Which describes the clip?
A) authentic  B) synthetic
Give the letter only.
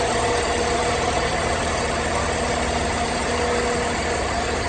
A